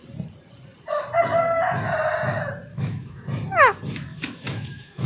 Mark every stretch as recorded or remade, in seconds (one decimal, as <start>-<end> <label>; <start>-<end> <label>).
0.0-2.7 recorded; 2.7-3.2 remade; 3.2-4.1 recorded; 4.1-5.1 remade